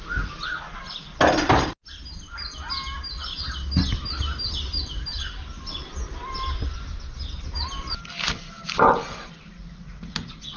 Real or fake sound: real